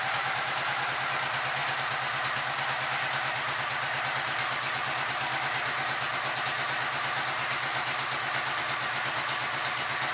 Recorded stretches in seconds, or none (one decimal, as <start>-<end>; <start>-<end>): 0.0-10.1